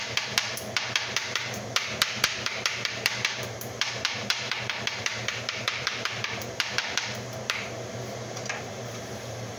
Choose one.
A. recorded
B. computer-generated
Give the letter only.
B